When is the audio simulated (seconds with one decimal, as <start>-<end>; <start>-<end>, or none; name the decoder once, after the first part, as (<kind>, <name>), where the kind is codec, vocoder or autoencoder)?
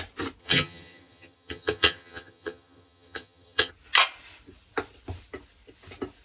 0.4-3.7 (vocoder, HiFi-GAN)